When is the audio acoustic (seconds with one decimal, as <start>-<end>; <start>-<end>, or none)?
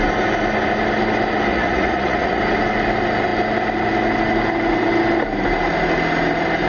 0.0-1.5; 2.4-6.7